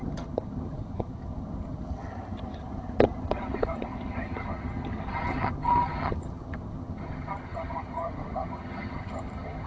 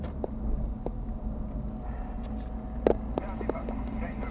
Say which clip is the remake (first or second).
first